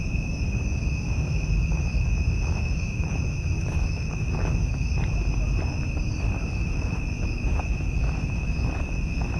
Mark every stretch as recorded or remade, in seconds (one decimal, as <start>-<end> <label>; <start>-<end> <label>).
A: 0.0-4.9 remade; 4.9-6.4 recorded; 6.4-9.4 remade